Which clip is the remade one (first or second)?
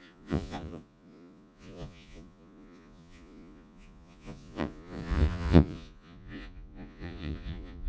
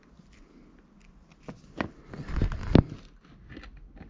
first